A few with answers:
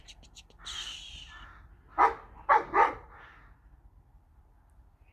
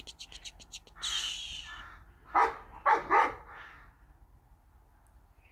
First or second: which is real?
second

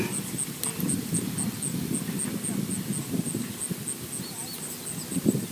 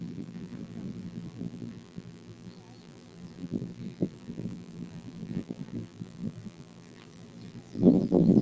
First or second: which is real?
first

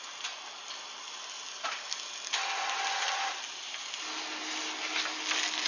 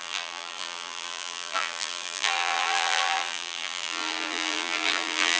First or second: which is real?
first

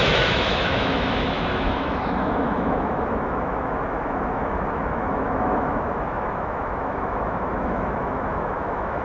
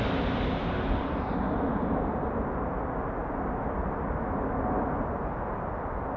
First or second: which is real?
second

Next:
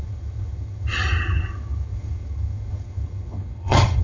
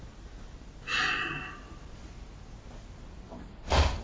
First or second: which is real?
second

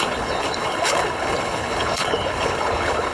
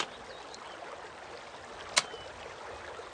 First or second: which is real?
second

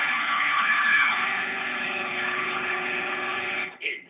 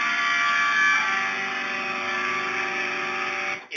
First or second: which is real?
second